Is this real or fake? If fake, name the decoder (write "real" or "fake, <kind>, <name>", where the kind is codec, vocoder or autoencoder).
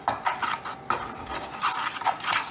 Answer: real